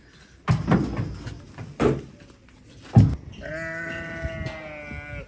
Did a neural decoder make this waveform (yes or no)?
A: no